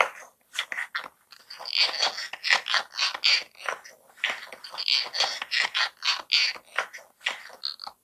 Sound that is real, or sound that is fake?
real